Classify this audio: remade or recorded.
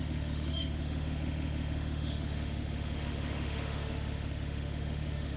remade